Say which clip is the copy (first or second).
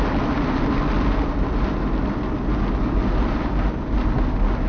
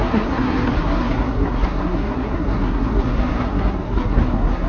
second